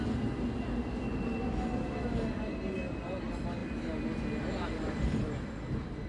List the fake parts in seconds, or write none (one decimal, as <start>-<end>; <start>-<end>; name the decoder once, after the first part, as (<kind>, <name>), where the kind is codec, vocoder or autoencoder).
none